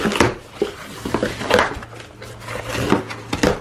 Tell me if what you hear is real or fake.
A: real